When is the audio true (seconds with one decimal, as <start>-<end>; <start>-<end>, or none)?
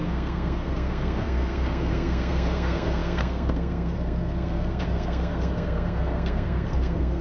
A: none